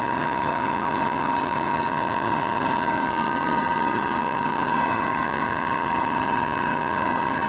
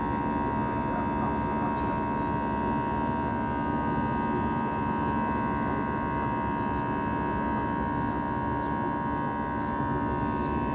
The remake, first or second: first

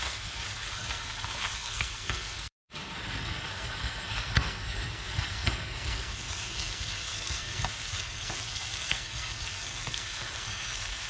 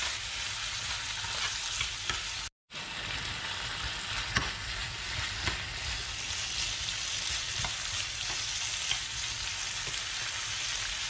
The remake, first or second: first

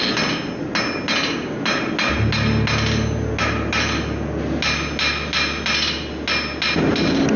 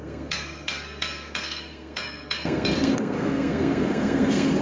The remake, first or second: second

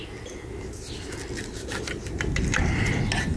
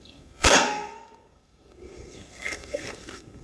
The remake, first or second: second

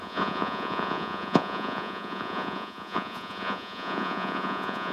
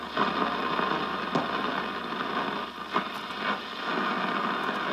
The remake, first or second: first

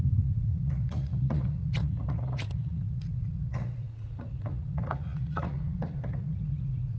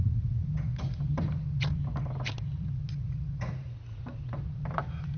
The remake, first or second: first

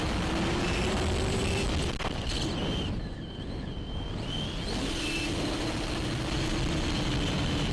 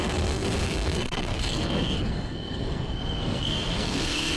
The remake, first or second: second